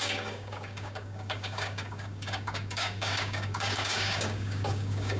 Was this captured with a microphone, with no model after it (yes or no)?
no